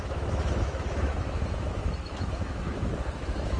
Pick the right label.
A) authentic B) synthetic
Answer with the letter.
B